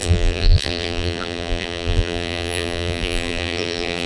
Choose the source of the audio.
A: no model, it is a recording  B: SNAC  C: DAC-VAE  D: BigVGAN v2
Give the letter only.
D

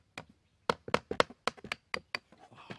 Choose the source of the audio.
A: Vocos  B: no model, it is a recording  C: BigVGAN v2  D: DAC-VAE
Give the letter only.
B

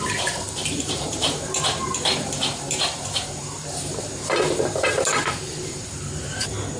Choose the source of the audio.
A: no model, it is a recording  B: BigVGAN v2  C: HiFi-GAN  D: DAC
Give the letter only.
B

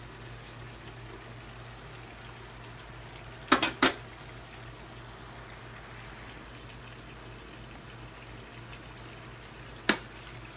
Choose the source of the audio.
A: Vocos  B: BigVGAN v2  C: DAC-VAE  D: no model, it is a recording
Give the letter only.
D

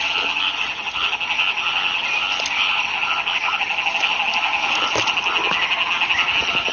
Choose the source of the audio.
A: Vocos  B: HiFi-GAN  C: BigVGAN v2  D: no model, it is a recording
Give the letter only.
D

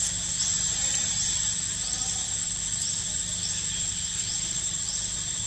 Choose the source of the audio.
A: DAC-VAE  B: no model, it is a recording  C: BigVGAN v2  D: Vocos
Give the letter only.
B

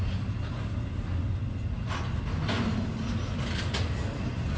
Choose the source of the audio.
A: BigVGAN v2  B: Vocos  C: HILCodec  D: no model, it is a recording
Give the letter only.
D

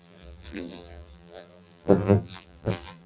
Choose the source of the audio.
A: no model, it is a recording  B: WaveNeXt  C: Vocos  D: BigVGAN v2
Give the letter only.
D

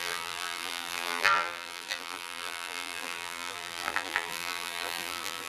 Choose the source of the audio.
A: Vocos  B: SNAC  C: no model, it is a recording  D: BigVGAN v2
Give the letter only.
D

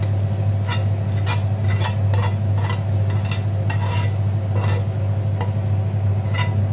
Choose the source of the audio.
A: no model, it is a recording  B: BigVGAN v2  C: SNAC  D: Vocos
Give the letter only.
A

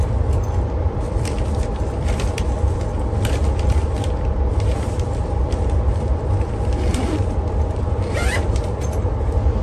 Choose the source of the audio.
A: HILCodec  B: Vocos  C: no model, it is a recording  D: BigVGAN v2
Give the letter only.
D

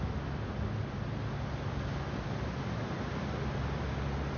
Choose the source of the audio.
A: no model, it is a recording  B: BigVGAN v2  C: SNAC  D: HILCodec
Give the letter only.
A